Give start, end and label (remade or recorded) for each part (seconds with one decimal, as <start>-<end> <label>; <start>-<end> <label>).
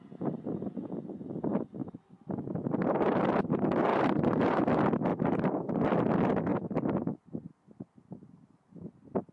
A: 0.0-1.8 recorded; 1.8-2.4 remade; 2.4-3.9 recorded; 3.9-4.6 remade; 4.6-5.1 recorded; 5.1-5.7 remade; 5.7-9.3 recorded